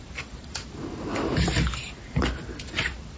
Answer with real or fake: real